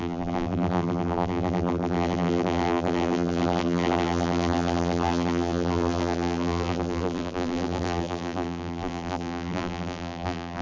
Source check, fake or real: fake